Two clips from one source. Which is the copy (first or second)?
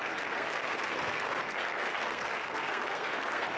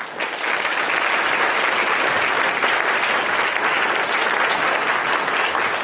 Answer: first